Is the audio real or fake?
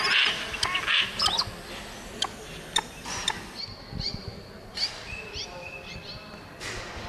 real